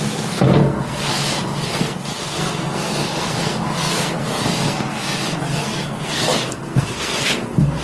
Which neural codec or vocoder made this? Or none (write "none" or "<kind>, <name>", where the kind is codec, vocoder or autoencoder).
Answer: codec, SNAC